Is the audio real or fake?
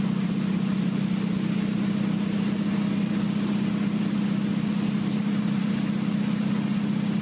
real